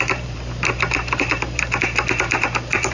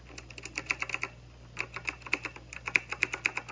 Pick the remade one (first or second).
first